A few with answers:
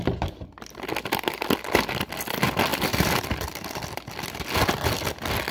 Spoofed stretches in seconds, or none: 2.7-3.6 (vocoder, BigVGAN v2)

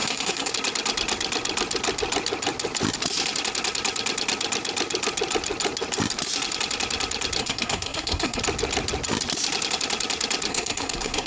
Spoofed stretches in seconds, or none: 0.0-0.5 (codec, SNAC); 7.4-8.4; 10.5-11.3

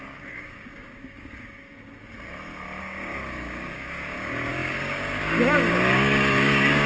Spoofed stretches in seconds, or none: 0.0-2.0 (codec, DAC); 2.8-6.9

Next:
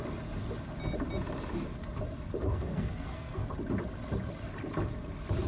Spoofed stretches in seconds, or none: 2.5-3.5 (codec, SNAC)

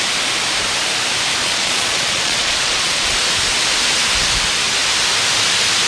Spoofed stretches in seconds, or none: 1.4-3.1 (vocoder, Vocos)

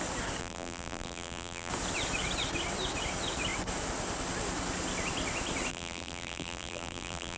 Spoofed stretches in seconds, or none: 0.4-1.7 (vocoder, BigVGAN v2); 5.7-7.4